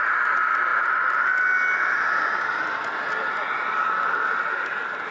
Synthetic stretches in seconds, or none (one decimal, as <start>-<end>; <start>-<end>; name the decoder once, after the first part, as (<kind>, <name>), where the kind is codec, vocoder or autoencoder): none